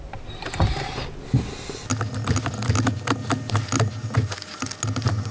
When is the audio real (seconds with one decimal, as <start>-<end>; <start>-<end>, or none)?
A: 0.0-5.3